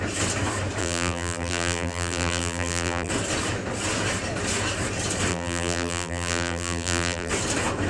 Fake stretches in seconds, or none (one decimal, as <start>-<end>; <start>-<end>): 0.8-3.1; 5.3-7.3